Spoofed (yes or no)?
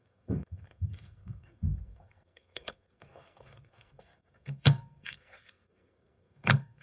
yes